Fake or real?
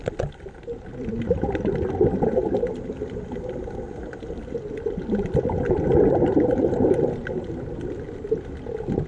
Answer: real